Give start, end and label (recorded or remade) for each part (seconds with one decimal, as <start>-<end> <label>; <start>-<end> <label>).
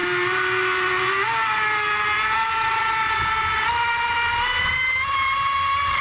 0.0-6.0 recorded